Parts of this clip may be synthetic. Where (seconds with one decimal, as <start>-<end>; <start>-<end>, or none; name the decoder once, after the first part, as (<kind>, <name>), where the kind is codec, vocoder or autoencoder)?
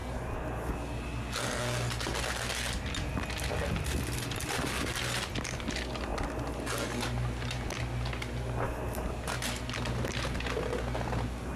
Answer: none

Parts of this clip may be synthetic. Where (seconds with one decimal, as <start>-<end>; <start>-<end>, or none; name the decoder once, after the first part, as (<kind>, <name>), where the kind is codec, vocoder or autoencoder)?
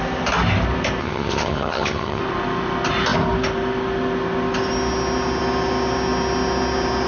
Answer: 1.0-2.2 (vocoder, HiFi-GAN)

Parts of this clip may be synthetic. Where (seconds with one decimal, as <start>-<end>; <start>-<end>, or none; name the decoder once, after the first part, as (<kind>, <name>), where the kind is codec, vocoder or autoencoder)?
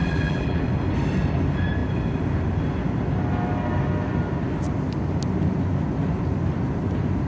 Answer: 0.0-0.6 (vocoder, BigVGAN v2)